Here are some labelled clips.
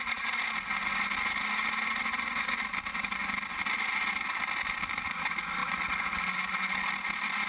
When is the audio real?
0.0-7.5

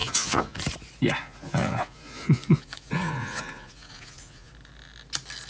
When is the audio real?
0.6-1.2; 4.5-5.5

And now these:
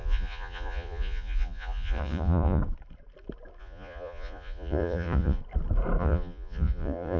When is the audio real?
2.6-3.6; 5.4-6.0